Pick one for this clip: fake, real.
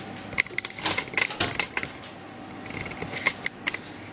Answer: real